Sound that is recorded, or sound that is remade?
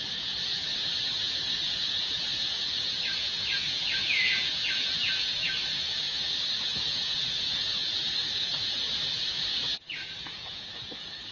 remade